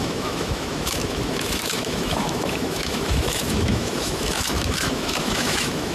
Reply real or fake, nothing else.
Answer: fake